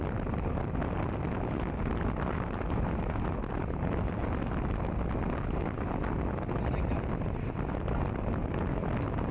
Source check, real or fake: real